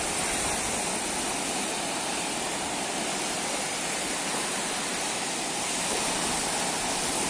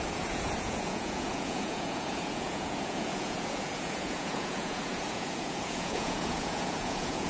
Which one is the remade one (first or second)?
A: second